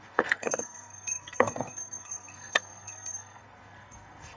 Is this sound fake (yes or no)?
yes